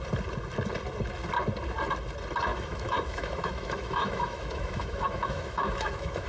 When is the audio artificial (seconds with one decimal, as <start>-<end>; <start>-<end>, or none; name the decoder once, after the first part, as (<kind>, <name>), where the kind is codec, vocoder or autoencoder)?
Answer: 2.5-6.3 (autoencoder, DAC-VAE)